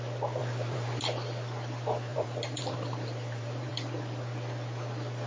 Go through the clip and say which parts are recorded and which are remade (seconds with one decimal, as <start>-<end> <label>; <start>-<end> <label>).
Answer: 0.0-0.4 recorded; 0.4-1.0 remade; 1.0-2.1 recorded; 2.1-3.7 remade; 3.7-5.3 recorded